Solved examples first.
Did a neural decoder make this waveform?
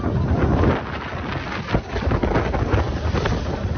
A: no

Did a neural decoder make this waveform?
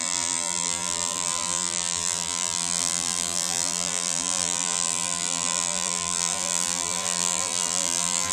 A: yes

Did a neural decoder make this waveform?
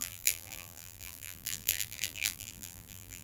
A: yes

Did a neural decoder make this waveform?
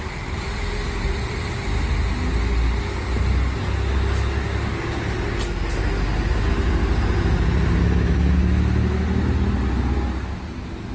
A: no